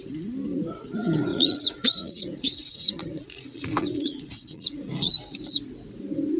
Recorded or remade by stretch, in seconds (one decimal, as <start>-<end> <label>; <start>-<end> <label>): 0.0-1.3 recorded; 1.3-5.1 remade; 5.1-6.4 recorded